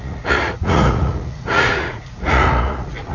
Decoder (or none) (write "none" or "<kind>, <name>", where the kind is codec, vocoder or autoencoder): vocoder, Vocos